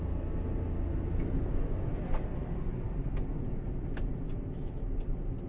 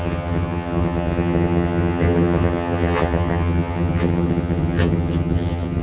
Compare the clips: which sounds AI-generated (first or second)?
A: second